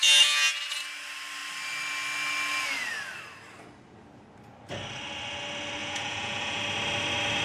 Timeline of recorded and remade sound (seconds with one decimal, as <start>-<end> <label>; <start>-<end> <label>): 0.0-5.8 recorded; 5.8-6.6 remade; 6.6-7.4 recorded